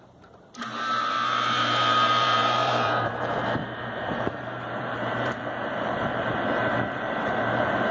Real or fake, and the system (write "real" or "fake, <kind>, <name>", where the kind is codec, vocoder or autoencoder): fake, vocoder, BigVGAN v2